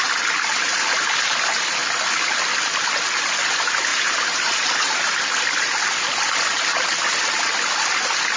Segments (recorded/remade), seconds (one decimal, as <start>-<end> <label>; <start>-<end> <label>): 0.0-3.9 recorded; 3.9-4.9 remade; 4.9-8.4 recorded